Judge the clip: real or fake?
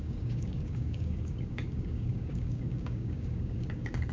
fake